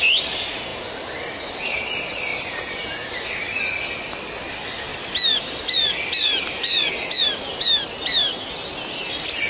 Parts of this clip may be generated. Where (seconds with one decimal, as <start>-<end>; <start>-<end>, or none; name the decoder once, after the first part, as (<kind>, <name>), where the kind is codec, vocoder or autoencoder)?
0.7-1.5 (vocoder, BigVGAN v2); 4.9-6.9